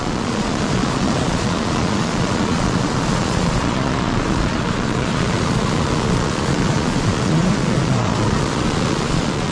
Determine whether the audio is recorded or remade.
remade